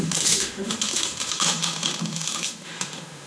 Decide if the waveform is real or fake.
fake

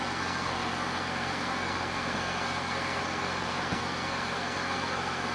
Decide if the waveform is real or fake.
fake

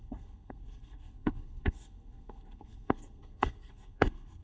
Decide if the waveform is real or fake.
fake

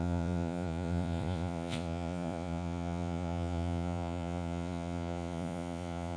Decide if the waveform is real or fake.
fake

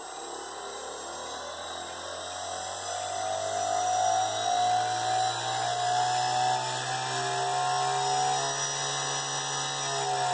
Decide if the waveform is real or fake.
real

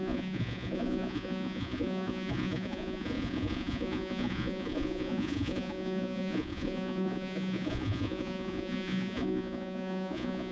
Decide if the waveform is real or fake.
fake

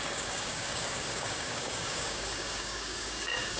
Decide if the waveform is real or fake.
fake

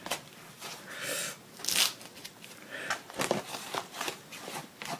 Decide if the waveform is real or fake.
real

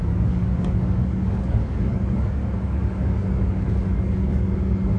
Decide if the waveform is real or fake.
fake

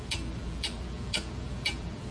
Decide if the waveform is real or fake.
fake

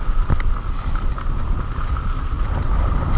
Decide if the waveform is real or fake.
real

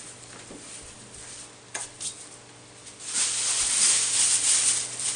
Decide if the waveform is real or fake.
real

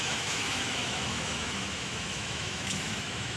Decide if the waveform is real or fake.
fake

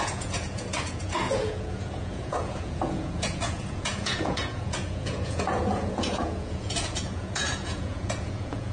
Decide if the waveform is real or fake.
fake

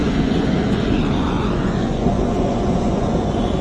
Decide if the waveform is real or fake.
fake